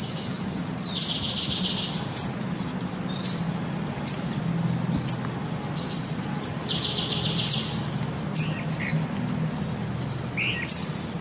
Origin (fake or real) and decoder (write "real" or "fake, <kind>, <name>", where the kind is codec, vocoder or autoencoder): real